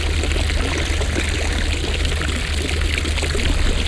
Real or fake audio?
real